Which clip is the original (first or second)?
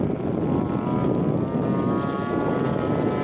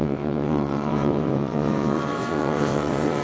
first